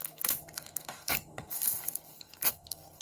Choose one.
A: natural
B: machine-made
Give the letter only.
B